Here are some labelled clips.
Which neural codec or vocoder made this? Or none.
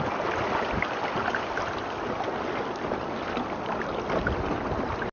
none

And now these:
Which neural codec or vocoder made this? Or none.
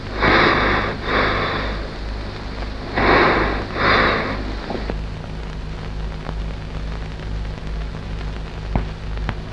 none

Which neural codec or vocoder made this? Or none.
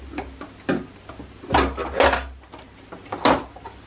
none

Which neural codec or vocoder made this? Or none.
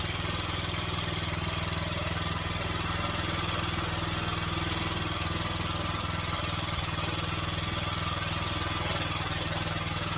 none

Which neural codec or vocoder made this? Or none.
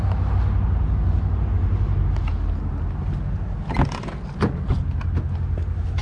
none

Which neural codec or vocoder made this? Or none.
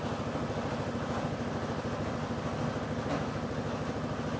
none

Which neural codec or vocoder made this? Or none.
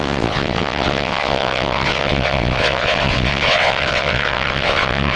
vocoder, WaveNeXt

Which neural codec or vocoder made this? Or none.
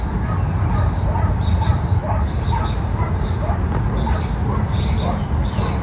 none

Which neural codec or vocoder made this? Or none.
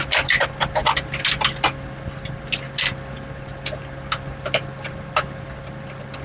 none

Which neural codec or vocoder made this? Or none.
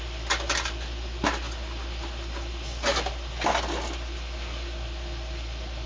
none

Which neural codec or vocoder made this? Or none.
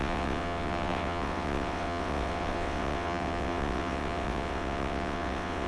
vocoder, WaveNeXt